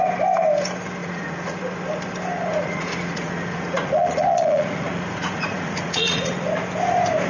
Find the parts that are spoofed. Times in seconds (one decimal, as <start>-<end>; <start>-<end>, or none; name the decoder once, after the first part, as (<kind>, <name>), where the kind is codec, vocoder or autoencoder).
1.0-1.6 (vocoder, Vocos); 2.5-6.3

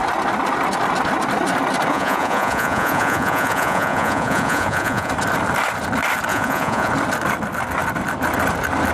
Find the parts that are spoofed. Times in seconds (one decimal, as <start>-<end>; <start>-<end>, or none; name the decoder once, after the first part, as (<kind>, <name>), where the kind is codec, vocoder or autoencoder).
1.9-5.1 (vocoder, Vocos); 6.3-6.9

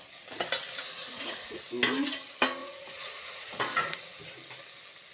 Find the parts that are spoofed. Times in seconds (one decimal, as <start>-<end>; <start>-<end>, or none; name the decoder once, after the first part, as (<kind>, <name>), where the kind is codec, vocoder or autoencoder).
0.8-1.6 (vocoder, Vocos); 2.6-4.2